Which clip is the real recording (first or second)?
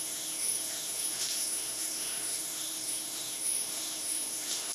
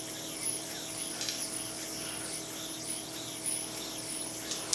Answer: second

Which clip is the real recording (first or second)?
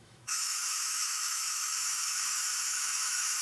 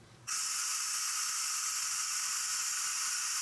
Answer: second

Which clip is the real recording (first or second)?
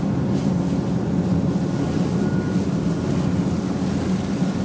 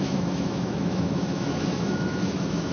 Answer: first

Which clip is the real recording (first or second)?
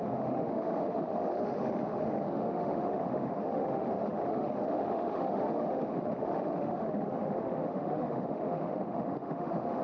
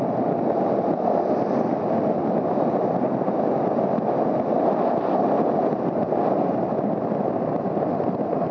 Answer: second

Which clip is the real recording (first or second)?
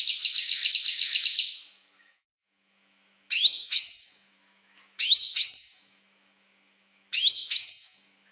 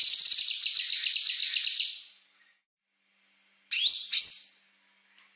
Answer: second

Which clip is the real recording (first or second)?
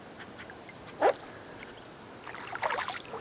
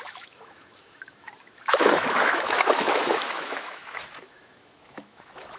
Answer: first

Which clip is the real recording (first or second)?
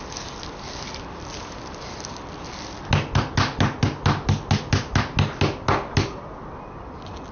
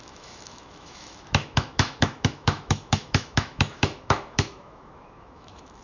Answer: first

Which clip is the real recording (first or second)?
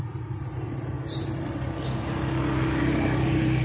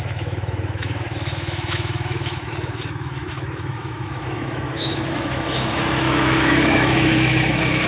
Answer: first